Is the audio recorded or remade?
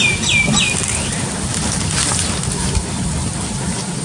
recorded